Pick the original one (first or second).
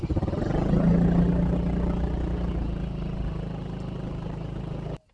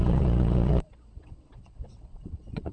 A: first